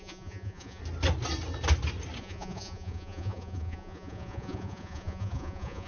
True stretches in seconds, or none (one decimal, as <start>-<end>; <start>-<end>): 0.8-2.2